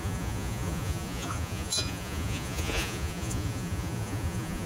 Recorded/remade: remade